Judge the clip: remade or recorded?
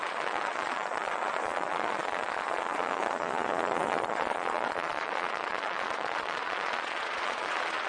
remade